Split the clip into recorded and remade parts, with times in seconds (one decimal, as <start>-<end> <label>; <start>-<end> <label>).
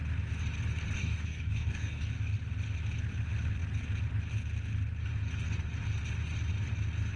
0.0-1.0 recorded; 1.0-2.1 remade; 2.1-7.2 recorded